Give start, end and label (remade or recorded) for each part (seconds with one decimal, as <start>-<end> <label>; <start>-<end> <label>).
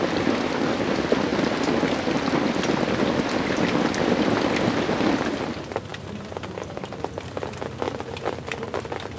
0.0-9.2 recorded